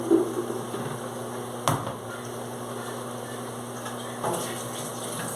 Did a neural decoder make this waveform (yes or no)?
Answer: no